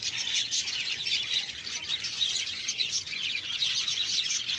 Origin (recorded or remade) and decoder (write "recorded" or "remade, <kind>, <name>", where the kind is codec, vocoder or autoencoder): remade, vocoder, Vocos